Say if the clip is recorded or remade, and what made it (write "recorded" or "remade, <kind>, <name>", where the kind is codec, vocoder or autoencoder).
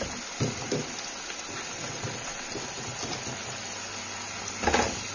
recorded